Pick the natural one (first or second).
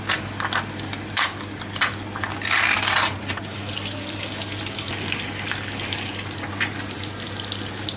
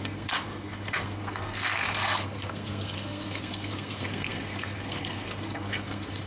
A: first